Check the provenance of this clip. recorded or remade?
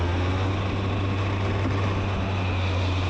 recorded